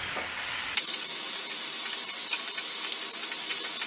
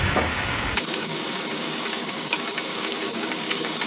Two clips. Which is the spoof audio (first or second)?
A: second